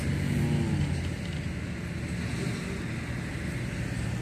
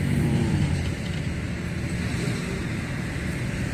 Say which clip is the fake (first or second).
second